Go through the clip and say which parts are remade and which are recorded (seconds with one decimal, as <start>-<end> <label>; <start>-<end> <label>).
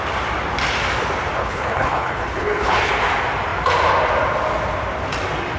0.0-1.4 recorded; 1.4-2.9 remade; 2.9-5.6 recorded